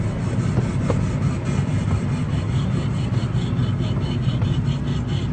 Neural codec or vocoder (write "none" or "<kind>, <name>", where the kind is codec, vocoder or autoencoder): none